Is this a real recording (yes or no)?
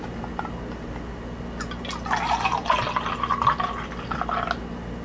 yes